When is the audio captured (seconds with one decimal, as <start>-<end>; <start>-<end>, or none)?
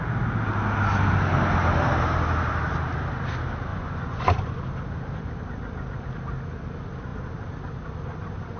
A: 0.0-3.7; 4.6-8.6